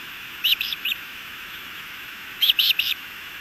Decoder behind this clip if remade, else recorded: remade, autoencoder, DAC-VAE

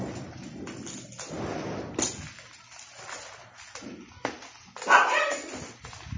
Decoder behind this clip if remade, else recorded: recorded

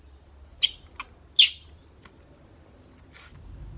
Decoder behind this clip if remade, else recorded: recorded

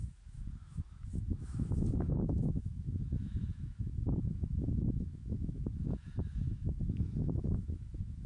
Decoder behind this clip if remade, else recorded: remade, autoencoder, DAC-VAE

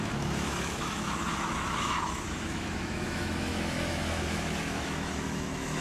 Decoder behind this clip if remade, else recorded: remade, autoencoder, DAC-VAE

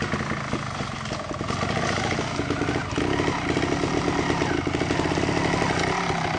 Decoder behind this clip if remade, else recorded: recorded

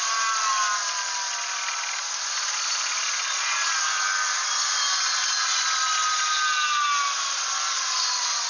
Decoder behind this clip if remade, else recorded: recorded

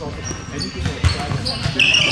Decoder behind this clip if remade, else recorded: recorded